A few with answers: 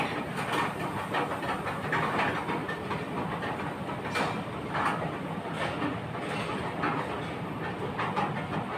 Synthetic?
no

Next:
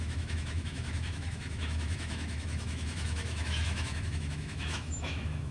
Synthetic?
yes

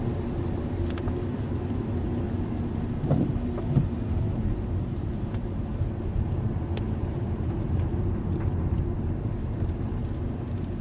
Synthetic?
no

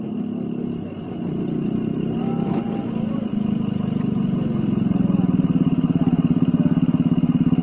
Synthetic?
no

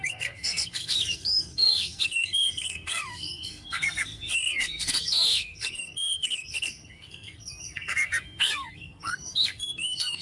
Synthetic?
yes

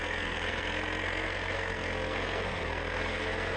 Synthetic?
yes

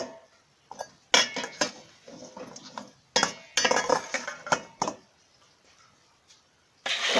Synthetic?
no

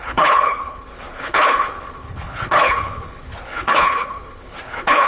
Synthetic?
yes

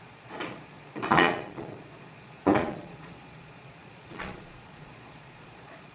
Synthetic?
yes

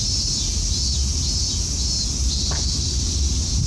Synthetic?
no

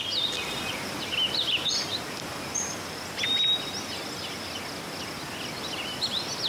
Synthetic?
no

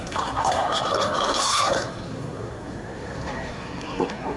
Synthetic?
yes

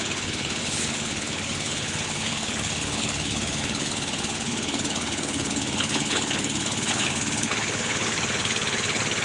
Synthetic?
yes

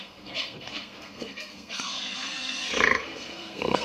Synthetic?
yes